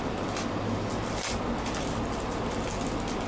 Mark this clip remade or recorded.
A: recorded